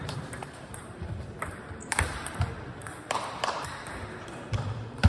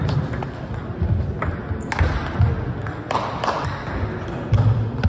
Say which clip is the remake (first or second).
first